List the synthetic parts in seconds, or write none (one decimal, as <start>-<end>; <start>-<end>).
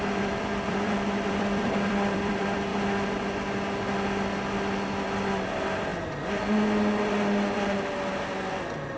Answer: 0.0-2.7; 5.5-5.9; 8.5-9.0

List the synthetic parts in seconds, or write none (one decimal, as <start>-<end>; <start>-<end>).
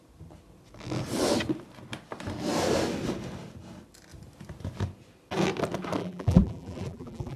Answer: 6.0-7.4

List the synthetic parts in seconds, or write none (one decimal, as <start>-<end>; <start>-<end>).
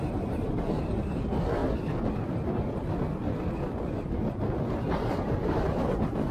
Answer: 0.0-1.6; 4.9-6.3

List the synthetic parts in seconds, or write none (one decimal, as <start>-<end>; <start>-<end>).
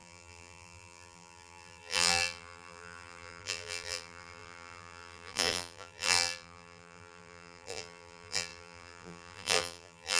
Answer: 0.0-10.2